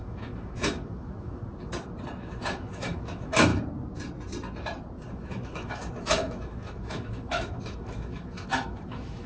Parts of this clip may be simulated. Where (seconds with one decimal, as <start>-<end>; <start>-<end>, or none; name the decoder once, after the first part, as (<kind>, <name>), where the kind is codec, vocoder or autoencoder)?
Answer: 0.0-1.4 (autoencoder, DAC-VAE); 2.2-3.5; 5.1-9.3